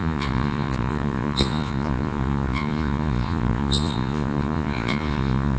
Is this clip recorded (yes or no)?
no